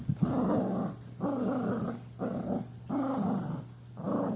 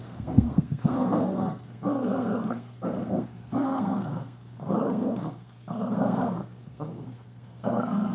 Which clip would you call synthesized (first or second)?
second